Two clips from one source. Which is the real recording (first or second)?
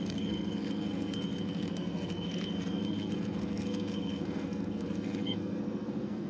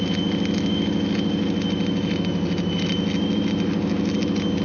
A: second